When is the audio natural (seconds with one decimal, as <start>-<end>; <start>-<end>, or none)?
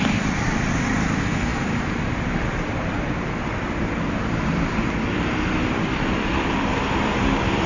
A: none